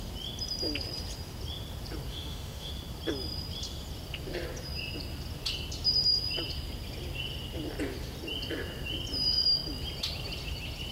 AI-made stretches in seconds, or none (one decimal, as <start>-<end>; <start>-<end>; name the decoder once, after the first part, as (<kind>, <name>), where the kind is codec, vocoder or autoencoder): 2.1-2.7 (autoencoder, DAC-VAE)